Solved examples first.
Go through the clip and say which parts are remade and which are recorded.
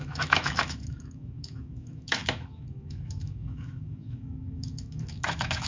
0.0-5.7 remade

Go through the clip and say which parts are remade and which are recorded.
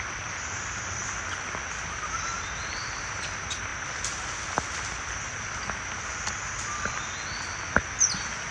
0.0-8.5 recorded